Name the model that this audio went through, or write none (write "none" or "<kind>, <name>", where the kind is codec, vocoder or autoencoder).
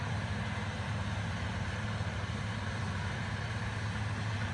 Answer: vocoder, BigVGAN v2